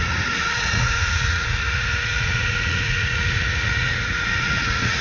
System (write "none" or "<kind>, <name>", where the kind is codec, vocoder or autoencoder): vocoder, Vocos